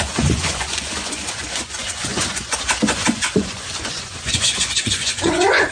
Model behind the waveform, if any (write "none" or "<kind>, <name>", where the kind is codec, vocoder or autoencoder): vocoder, Vocos